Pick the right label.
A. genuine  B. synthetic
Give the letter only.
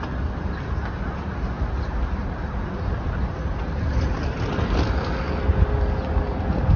A